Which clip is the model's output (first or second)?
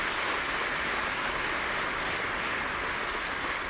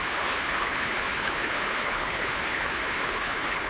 second